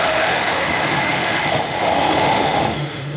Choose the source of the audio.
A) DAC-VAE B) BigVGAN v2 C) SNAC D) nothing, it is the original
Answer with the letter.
A